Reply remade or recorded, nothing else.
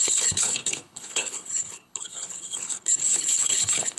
remade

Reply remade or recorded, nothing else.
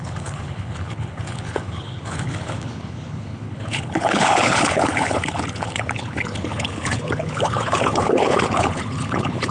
remade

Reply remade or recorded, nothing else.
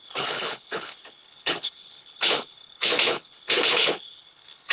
remade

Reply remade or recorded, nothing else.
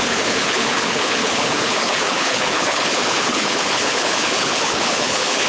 remade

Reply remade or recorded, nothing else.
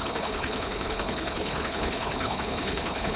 remade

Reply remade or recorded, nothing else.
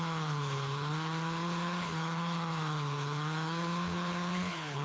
remade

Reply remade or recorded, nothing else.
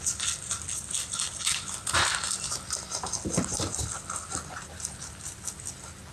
recorded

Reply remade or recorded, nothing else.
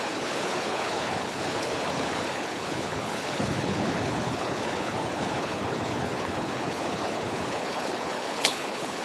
remade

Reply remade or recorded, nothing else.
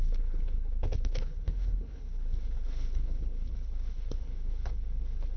remade